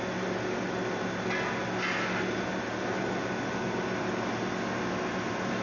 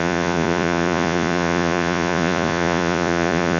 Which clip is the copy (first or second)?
second